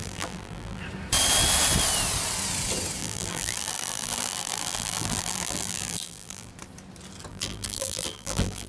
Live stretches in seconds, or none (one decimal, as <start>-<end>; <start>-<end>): 0.8-3.0; 6.5-7.3